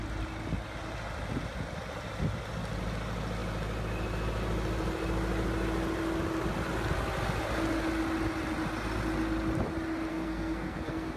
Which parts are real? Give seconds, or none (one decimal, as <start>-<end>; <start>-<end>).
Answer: 0.0-10.1

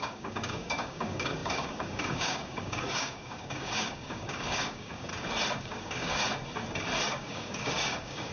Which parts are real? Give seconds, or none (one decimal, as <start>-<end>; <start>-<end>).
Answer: 5.1-5.6; 6.2-7.1

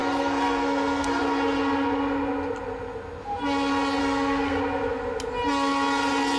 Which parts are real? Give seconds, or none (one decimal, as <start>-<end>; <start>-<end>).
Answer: 1.2-4.0; 4.6-6.4

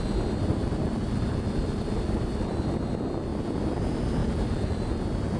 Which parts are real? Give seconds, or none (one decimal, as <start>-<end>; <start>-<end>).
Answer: 0.0-0.5; 2.9-4.2; 4.9-5.4

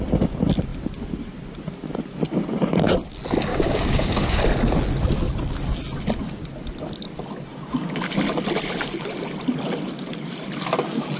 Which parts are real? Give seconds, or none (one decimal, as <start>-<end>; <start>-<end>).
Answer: 0.0-3.5; 4.4-11.2